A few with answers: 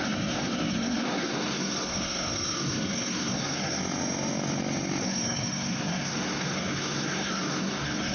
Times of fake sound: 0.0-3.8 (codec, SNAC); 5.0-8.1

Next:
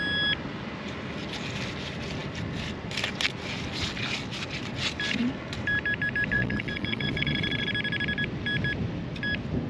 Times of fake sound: 6.3-7.7 (vocoder, Vocos)

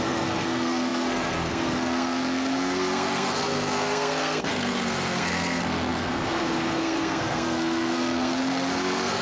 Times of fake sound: 0.0-9.2 (codec, SNAC)

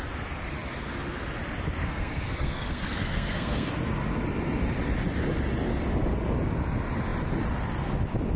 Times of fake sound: 1.8-3.7 (codec, SNAC)

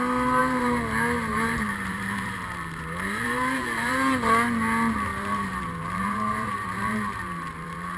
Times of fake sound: 0.4-0.9 (vocoder, BigVGAN v2); 1.3-3.9; 5.1-8.0

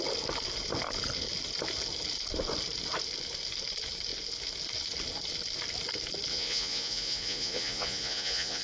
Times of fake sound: 6.3-8.6 (vocoder, Vocos)